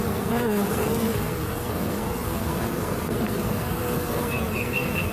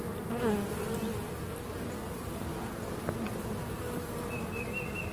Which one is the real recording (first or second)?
second